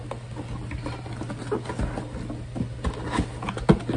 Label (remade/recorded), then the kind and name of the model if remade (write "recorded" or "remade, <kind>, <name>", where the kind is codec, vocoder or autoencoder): recorded